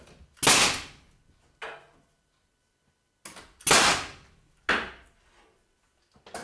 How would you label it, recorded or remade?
recorded